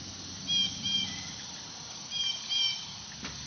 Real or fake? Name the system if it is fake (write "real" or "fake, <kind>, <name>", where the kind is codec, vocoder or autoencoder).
real